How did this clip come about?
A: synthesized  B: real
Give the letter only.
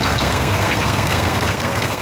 A